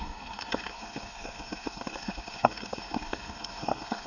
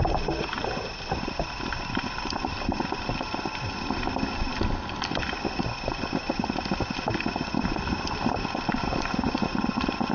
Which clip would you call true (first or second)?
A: second